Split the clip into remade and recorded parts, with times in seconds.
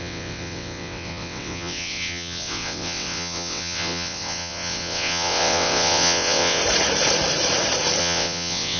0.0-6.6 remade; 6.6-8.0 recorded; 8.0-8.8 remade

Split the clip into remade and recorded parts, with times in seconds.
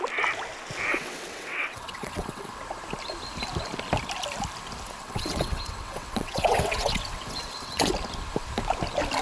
0.0-0.9 recorded; 0.9-2.6 remade; 2.6-5.0 recorded; 5.0-7.9 remade; 7.9-9.2 recorded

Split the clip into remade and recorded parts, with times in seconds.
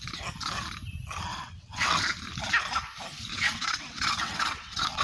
0.0-1.3 recorded; 1.3-2.0 remade; 2.0-3.3 recorded; 3.3-5.0 remade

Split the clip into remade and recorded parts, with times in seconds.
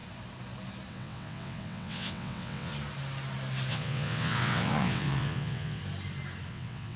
0.0-0.9 recorded; 0.9-2.7 remade; 2.7-3.7 recorded; 3.7-5.8 remade; 5.8-6.5 recorded; 6.5-7.0 remade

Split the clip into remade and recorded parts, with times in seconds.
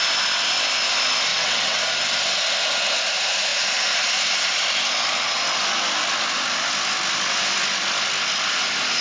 0.0-1.3 recorded; 1.3-1.8 remade; 1.8-9.0 recorded